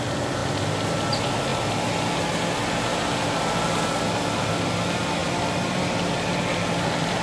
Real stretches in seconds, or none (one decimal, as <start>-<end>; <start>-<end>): 0.0-7.2